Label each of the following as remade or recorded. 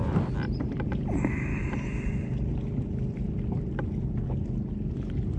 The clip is recorded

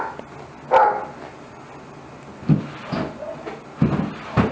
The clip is recorded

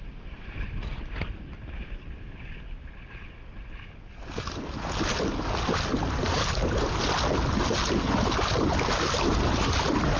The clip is recorded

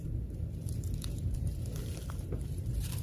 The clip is remade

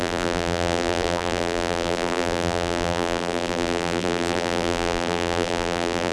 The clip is remade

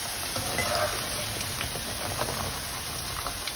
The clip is remade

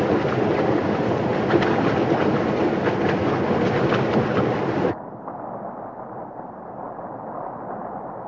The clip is recorded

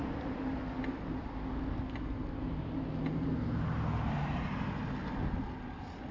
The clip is recorded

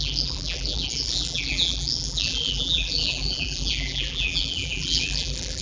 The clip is remade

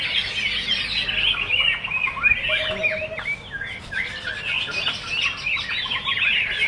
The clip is recorded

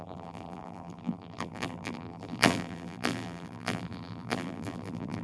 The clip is remade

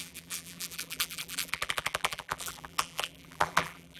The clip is remade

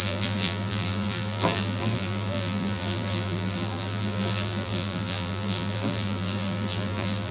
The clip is remade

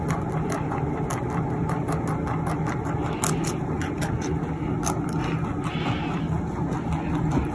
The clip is recorded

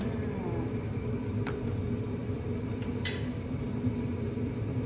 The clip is remade